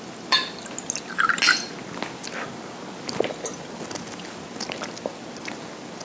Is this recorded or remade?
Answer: recorded